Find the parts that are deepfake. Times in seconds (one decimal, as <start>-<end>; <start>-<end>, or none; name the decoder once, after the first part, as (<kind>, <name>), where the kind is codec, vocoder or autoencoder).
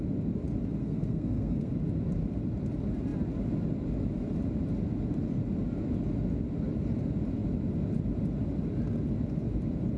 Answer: 0.8-1.7 (codec, SNAC)